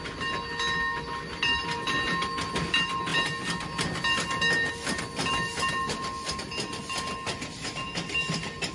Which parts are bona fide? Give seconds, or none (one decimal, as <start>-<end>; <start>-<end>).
0.0-8.7